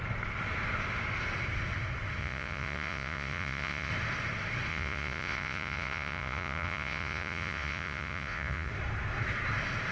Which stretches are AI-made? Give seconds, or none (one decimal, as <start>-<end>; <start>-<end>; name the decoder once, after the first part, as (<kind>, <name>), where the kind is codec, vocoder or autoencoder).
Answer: 2.2-3.9 (vocoder, Vocos); 4.7-8.7